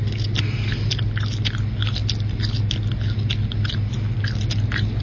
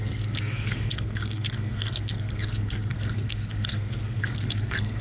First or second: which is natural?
first